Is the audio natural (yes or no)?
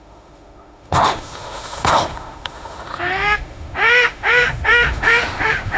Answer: no